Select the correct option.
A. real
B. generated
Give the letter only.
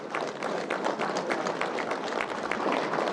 A